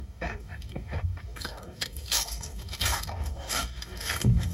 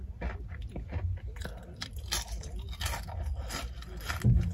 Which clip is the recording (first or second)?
second